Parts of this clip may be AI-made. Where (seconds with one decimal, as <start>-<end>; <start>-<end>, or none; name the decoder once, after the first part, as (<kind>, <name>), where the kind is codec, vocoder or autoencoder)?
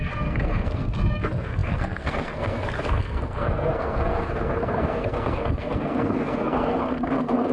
0.0-7.5 (codec, SNAC)